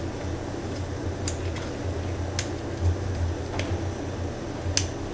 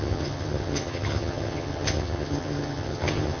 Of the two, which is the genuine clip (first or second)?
first